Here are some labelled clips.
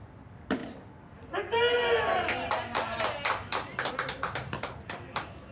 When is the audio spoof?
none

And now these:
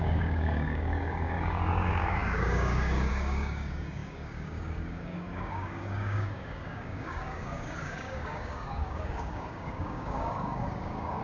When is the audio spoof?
0.0-11.2 (codec, DAC)

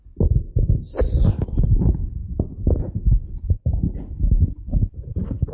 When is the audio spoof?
0.0-0.9 (codec, DAC)

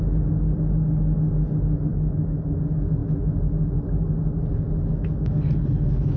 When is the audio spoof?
1.9-2.6 (codec, DAC)

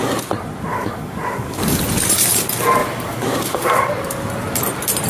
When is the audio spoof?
0.7-1.8 (codec, DAC); 2.8-3.9